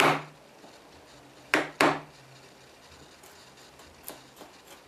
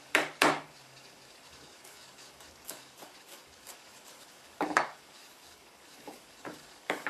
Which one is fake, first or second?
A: second